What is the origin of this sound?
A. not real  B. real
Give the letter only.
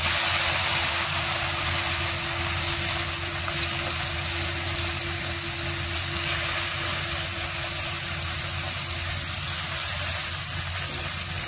B